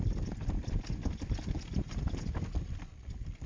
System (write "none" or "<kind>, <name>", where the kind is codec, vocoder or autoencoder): none